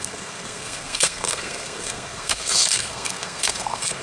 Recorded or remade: remade